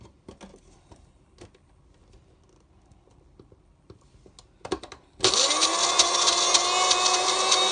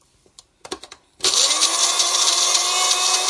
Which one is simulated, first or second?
second